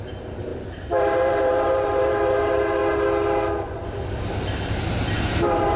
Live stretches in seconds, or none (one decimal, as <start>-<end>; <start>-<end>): 2.8-4.9